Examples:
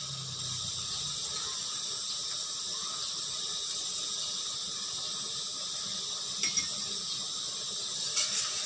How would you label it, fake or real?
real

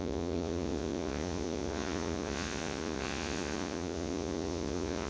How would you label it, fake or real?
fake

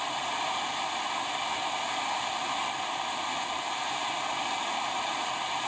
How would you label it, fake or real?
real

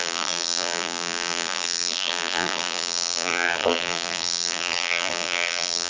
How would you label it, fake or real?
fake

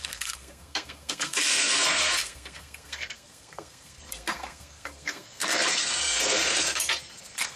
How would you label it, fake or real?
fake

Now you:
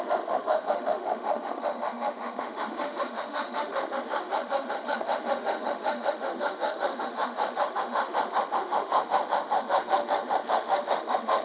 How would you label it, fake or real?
fake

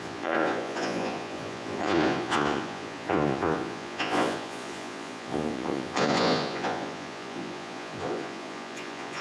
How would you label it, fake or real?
fake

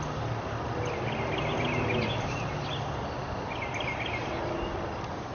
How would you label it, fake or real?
real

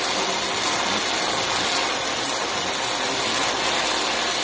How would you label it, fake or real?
real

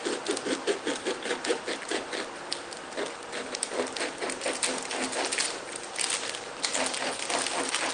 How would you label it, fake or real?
real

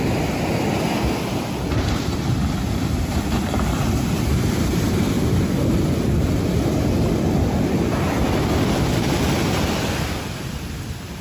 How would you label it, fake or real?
fake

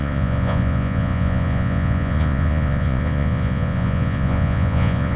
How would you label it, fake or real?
fake